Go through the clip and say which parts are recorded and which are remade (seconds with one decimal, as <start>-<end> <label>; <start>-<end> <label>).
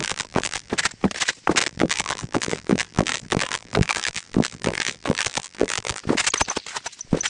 0.0-0.7 remade; 0.7-1.6 recorded; 1.6-6.0 remade; 6.0-7.3 recorded